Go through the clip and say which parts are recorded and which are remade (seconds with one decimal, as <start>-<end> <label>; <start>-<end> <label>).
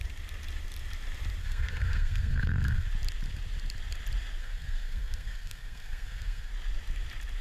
0.0-1.4 recorded; 1.4-2.9 remade; 2.9-4.4 recorded; 4.4-6.5 remade; 6.5-7.4 recorded